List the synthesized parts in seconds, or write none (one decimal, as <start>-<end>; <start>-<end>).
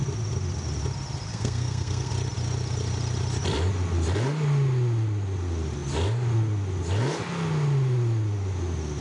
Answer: 1.3-2.1